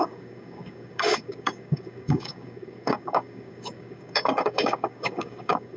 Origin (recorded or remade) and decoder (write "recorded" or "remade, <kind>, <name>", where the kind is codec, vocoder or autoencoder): remade, codec, DAC